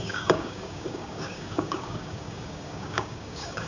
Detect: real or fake fake